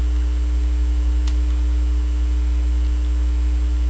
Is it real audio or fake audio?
real